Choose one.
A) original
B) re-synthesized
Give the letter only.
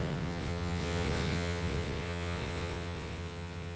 B